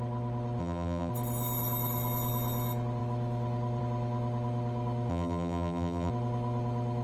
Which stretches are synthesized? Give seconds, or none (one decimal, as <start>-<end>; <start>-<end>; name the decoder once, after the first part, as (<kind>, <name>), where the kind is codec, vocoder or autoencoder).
0.6-1.1 (vocoder, BigVGAN v2); 5.1-6.1

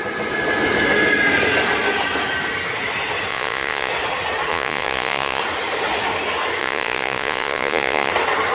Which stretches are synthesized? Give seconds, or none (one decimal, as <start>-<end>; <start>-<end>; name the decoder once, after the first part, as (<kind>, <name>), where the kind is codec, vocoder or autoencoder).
3.3-3.9 (vocoder, Vocos); 4.5-5.4; 6.6-8.1

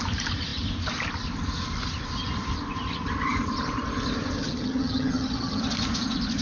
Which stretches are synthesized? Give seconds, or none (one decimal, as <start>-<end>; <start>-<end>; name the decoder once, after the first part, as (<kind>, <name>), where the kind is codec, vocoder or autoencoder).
4.4-5.6 (vocoder, HiFi-GAN)

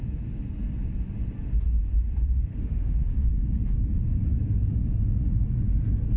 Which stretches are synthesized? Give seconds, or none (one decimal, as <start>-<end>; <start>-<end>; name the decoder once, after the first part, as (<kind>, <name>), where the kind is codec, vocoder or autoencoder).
2.5-3.3 (autoencoder, DAC-VAE)